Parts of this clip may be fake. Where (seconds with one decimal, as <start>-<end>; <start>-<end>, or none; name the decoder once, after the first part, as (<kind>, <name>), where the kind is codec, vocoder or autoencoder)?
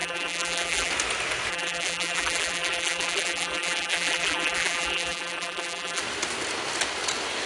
0.0-0.9 (vocoder, BigVGAN v2); 1.5-6.0